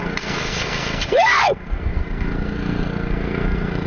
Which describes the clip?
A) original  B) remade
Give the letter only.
B